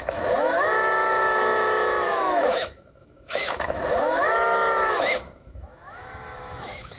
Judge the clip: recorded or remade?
remade